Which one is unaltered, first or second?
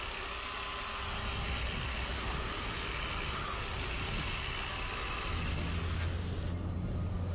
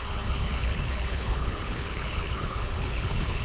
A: first